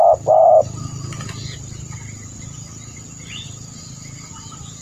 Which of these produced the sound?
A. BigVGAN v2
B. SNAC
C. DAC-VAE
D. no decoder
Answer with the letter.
D